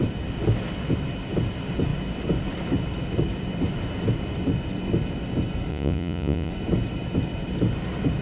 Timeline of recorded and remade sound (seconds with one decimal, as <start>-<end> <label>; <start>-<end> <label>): 0.0-5.7 recorded; 5.7-6.5 remade; 6.5-8.2 recorded